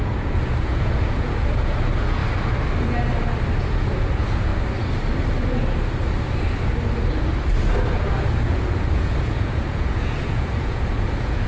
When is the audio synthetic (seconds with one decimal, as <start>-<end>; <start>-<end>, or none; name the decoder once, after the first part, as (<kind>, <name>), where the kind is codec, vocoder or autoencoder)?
0.0-2.2 (vocoder, Vocos); 3.6-4.5; 7.9-11.5